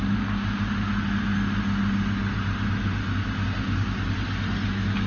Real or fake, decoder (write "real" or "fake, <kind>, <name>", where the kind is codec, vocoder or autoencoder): real